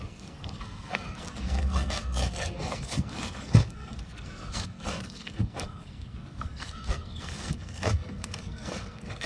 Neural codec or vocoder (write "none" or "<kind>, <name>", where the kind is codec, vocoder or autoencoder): codec, SNAC